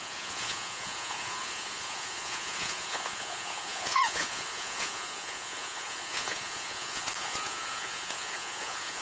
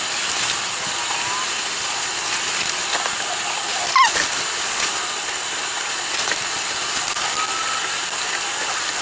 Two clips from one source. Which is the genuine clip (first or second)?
second